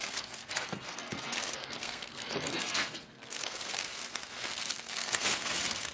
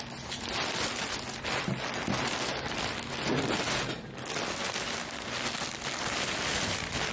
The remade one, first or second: first